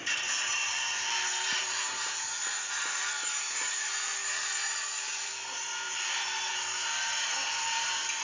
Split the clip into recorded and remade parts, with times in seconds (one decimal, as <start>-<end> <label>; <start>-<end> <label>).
0.0-8.2 remade